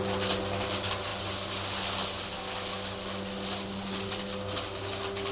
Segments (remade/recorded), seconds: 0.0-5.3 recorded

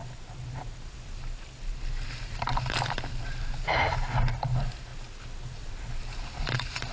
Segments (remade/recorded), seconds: 0.0-6.9 recorded